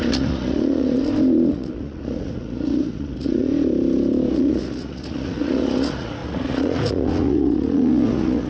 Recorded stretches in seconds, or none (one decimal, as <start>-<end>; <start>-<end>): 1.0-1.5; 3.5-4.3